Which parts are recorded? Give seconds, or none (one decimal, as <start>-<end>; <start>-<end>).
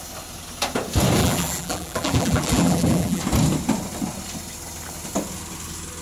0.0-1.2; 3.2-6.0